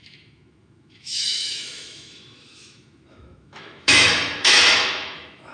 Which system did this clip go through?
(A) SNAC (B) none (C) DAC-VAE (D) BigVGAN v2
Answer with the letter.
C